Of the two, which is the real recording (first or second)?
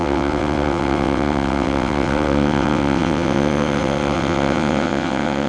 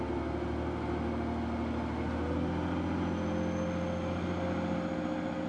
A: second